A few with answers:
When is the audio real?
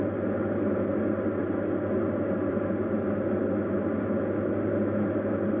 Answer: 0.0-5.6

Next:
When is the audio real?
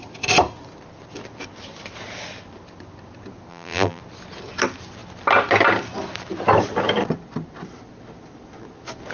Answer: 0.0-3.5; 4.0-9.1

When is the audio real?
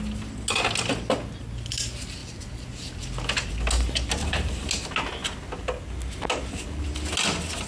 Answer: 0.0-4.2; 4.7-7.7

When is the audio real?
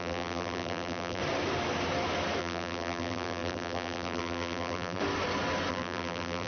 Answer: 1.2-2.4; 5.0-5.7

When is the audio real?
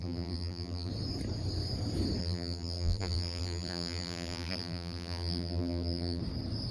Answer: 0.9-2.2; 6.2-6.7